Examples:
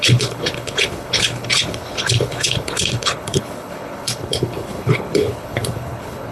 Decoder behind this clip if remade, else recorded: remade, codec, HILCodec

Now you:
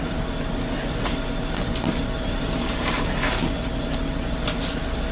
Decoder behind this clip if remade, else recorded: recorded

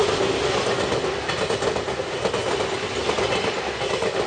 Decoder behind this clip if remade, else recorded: recorded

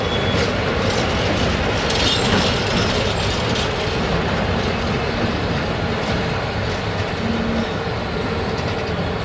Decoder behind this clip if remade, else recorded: recorded